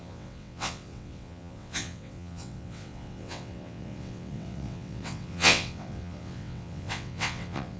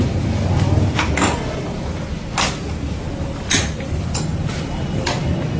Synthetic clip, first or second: first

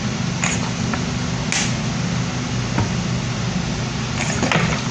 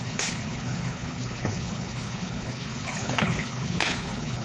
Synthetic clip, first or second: second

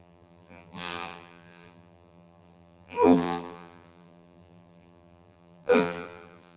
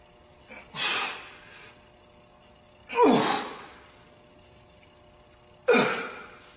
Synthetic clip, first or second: first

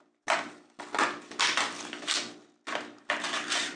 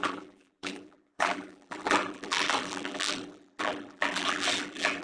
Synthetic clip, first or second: second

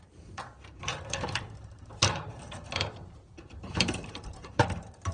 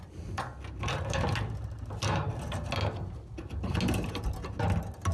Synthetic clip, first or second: first